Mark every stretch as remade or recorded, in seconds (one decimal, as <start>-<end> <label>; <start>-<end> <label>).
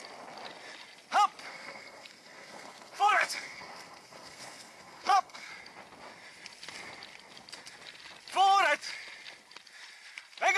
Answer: 0.0-1.5 recorded; 1.5-5.5 remade; 5.5-10.6 recorded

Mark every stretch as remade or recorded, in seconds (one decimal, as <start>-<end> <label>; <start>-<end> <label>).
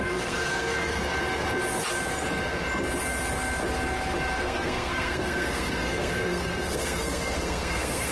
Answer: 0.0-1.0 remade; 1.0-4.4 recorded; 4.4-8.1 remade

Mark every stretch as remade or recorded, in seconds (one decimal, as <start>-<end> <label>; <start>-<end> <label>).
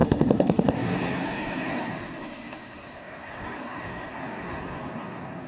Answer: 0.0-5.5 remade